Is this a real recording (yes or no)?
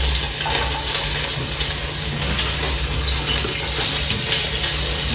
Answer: yes